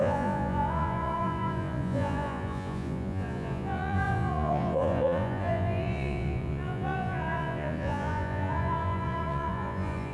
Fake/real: fake